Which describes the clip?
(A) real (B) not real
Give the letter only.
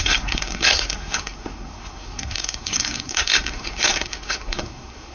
B